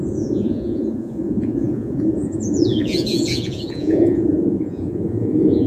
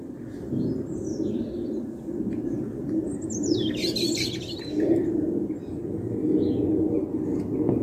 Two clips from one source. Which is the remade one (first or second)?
first